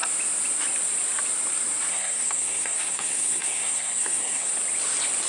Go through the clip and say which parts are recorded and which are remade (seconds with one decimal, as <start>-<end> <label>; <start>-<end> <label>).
0.0-1.9 recorded; 1.9-4.5 remade; 4.5-5.3 recorded